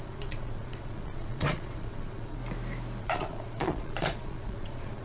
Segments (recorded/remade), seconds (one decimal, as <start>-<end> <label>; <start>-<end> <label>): 0.0-2.4 remade; 2.4-3.0 recorded; 3.0-5.0 remade